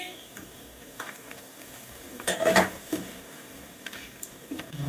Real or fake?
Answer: fake